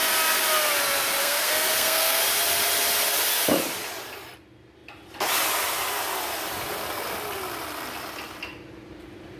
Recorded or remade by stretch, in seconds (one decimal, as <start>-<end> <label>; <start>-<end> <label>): 0.0-1.2 recorded; 1.2-2.2 remade; 2.2-9.4 recorded

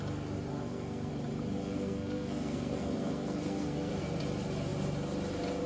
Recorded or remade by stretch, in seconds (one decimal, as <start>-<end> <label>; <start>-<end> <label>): 0.0-0.5 recorded; 0.5-1.1 remade; 1.1-1.6 recorded; 1.6-4.2 remade; 4.2-5.7 recorded

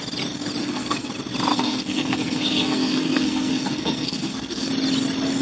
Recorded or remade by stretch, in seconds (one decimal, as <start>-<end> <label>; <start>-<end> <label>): 0.0-0.6 recorded; 0.6-1.1 remade; 1.1-1.5 recorded; 1.5-4.7 remade; 4.7-5.4 recorded

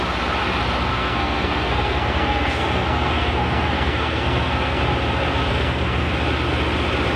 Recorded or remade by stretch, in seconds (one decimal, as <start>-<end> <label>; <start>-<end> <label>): 0.0-0.9 recorded; 0.9-4.8 remade; 4.8-5.5 recorded; 5.5-6.1 remade; 6.1-7.2 recorded

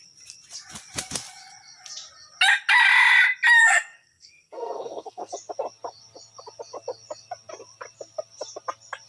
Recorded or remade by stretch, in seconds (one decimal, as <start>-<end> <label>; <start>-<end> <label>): 0.0-3.6 recorded; 3.6-5.3 remade; 5.3-9.1 recorded